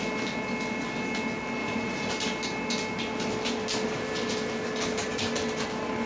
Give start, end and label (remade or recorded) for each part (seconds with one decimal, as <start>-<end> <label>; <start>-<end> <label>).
0.0-1.6 recorded; 1.6-2.1 remade; 2.1-6.1 recorded